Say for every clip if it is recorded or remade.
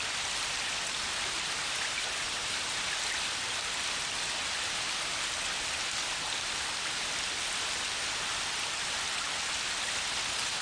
recorded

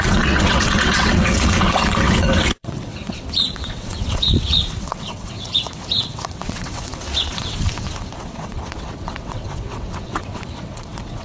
remade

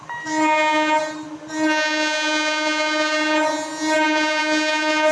recorded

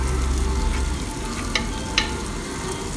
recorded